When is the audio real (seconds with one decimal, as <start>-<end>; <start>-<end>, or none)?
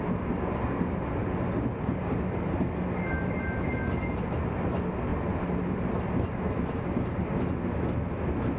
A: 0.0-8.6